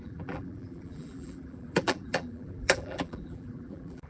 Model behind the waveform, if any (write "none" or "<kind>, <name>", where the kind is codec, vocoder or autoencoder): vocoder, BigVGAN v2